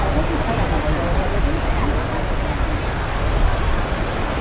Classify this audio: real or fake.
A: real